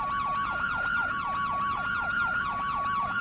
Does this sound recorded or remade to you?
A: remade